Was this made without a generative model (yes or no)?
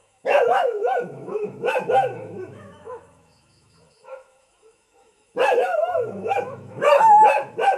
no